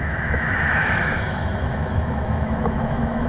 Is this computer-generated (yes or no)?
yes